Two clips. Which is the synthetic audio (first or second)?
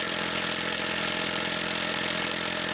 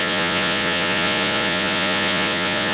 second